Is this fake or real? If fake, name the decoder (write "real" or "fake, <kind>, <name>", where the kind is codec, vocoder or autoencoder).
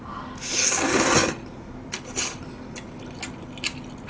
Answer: real